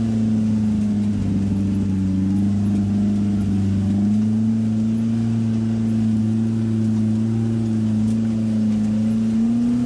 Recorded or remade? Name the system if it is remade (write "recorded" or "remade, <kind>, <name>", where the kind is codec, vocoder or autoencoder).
recorded